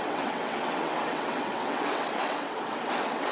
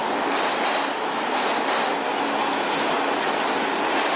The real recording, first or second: second